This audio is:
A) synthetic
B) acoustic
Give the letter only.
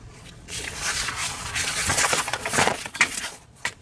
A